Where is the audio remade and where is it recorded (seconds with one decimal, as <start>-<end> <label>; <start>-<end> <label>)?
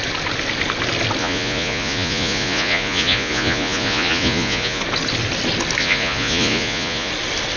0.0-1.2 recorded; 1.2-4.8 remade; 4.8-5.8 recorded; 5.8-7.1 remade; 7.1-7.6 recorded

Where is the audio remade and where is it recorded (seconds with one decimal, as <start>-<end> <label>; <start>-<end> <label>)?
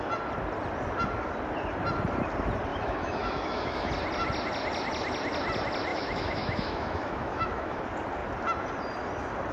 0.0-2.7 recorded; 2.7-3.9 remade; 3.9-5.9 recorded; 5.9-7.8 remade; 7.8-9.5 recorded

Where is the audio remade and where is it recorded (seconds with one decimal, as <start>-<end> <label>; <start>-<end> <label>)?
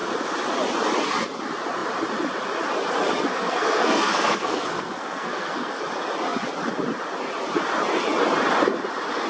0.0-3.3 recorded; 3.3-5.8 remade; 5.8-9.3 recorded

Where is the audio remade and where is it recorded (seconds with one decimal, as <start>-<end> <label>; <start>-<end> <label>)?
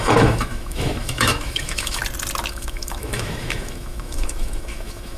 0.0-2.0 remade; 2.0-2.5 recorded; 2.5-5.2 remade